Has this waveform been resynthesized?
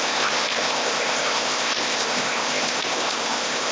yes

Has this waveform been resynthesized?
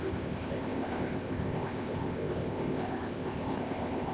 yes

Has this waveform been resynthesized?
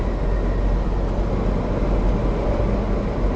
no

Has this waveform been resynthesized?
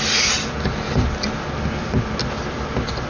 no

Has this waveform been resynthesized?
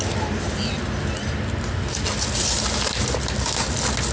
no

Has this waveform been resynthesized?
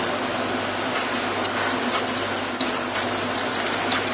no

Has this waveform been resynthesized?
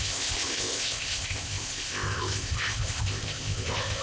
yes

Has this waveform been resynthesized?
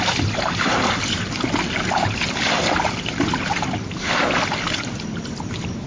no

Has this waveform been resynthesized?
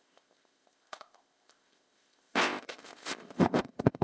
yes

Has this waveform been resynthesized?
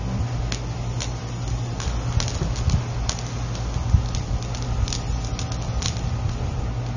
no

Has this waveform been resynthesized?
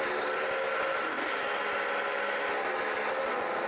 no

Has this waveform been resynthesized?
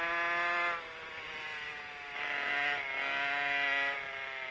no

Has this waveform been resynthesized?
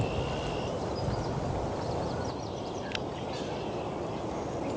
no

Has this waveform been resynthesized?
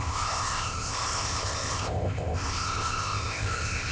yes